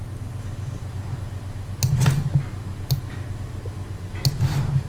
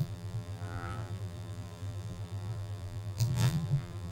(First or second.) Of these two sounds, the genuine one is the first